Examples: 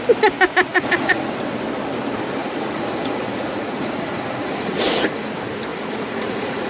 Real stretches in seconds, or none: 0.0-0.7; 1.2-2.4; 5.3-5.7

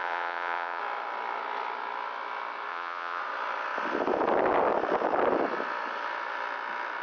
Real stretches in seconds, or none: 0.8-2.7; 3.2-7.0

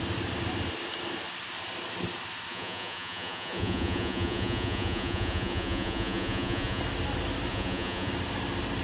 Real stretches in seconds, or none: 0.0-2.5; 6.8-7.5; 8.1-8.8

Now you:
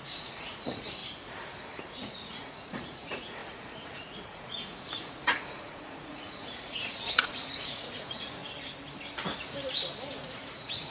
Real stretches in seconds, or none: 1.0-1.8; 8.4-10.2

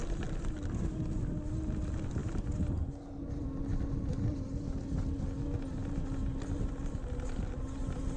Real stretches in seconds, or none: 0.0-8.2

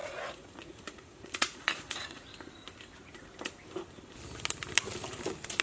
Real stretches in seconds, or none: 2.3-5.6

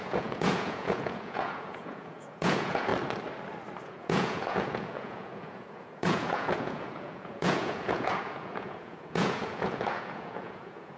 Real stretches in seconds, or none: 2.9-3.8

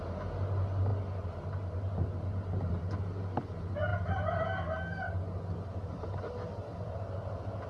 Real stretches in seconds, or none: 0.0-7.7